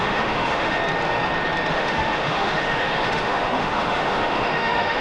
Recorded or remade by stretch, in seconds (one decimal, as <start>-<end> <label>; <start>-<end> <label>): 0.0-0.8 remade; 0.8-1.7 recorded; 1.7-5.0 remade